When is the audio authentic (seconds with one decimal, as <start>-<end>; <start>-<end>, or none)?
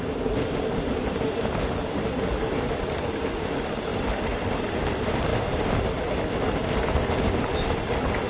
0.0-3.9; 4.8-5.3; 6.0-8.3